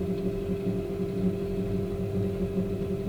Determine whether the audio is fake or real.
real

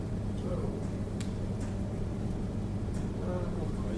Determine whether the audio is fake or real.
real